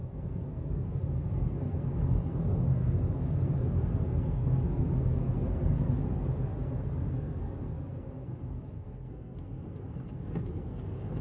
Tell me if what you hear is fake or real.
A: fake